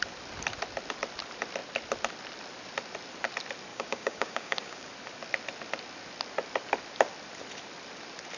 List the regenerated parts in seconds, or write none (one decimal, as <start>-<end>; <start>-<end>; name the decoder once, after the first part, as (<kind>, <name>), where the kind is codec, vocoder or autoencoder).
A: 3.7-4.9 (codec, DAC)